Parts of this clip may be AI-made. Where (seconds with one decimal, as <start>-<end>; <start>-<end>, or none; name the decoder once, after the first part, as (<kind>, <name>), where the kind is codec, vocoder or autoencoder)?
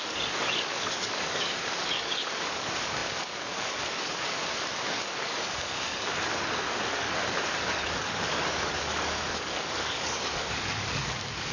0.0-11.5 (codec, DAC)